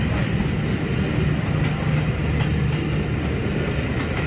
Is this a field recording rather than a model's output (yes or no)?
yes